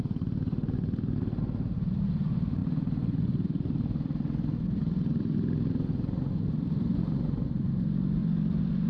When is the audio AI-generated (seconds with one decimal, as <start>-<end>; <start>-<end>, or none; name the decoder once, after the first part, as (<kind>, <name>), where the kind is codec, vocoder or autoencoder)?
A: none